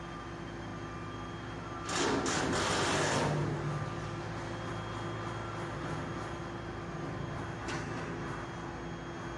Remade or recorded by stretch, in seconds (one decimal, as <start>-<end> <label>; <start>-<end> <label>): 0.0-9.4 recorded